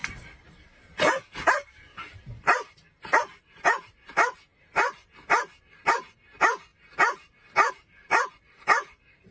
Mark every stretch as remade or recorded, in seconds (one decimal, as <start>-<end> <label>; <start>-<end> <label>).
0.0-9.3 remade